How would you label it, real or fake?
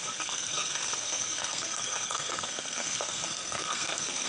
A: fake